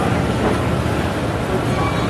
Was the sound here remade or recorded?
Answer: recorded